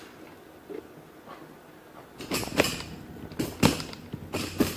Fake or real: real